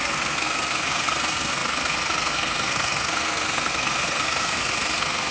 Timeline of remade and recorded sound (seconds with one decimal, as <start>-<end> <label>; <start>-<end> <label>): 0.0-5.3 remade

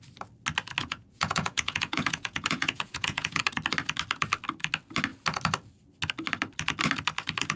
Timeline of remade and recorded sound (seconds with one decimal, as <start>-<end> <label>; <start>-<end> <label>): 0.0-0.8 recorded; 0.8-3.4 remade; 3.4-7.6 recorded